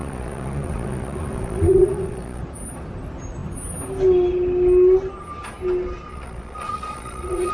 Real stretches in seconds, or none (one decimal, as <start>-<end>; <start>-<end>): 2.4-6.1

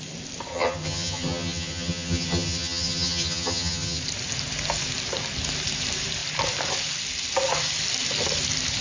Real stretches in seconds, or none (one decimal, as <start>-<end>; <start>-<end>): 0.0-0.5; 4.0-8.8

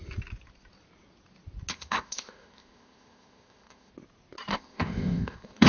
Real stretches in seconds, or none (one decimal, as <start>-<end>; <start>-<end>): 0.0-1.7; 3.9-4.5

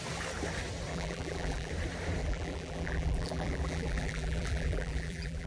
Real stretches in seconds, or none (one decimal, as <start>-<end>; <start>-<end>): 0.0-0.9; 1.7-2.2

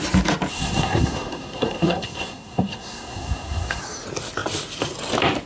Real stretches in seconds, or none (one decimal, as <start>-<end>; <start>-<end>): 0.0-0.5; 3.8-5.5

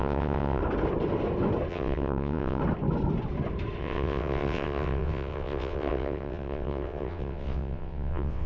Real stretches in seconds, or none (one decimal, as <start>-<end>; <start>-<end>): 0.6-1.7; 2.6-3.8

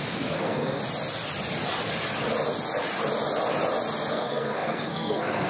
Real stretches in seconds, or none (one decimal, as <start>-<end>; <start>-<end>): 0.8-4.1